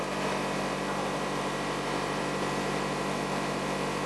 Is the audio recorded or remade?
recorded